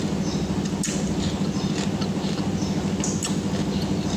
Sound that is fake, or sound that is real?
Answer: real